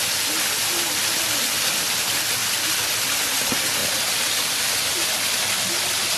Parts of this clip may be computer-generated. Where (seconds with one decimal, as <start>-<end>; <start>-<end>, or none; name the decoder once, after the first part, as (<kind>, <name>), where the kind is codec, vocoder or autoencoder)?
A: none

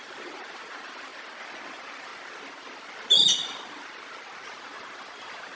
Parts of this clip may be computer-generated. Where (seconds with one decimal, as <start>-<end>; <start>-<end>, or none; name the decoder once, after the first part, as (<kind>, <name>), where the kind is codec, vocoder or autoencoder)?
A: 0.0-1.1 (vocoder, BigVGAN v2); 1.7-2.1; 4.6-5.6

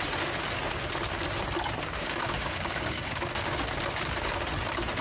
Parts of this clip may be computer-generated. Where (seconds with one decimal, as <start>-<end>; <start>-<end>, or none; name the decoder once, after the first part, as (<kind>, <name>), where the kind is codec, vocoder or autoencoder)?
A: 2.0-3.6 (codec, DAC)

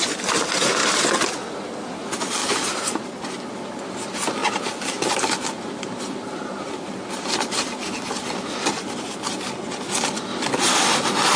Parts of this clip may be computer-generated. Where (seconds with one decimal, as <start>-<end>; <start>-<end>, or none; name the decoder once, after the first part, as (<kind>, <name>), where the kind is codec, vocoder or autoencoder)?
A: 4.4-6.7 (vocoder, BigVGAN v2)